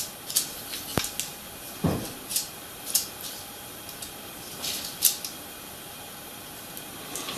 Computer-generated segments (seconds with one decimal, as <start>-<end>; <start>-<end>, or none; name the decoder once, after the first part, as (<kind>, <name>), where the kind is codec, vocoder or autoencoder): none

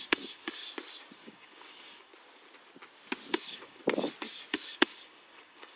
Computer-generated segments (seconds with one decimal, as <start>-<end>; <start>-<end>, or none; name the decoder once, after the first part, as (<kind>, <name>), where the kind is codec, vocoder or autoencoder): 0.0-0.6 (codec, DAC); 1.1-2.1; 3.3-3.8; 4.5-5.8

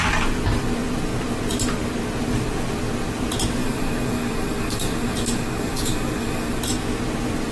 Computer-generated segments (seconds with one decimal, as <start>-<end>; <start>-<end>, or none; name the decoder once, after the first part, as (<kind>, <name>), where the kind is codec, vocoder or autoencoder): 3.6-6.6 (codec, DAC)

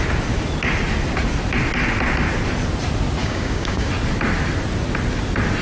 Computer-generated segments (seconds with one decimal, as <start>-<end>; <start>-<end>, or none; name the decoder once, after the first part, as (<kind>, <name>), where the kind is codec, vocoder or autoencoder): 3.2-3.9 (codec, DAC)